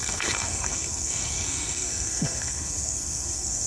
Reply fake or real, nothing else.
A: fake